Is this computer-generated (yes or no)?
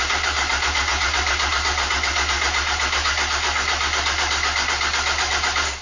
no